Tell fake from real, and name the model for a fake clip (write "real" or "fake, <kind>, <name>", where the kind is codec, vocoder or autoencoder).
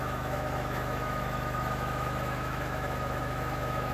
fake, autoencoder, DAC-VAE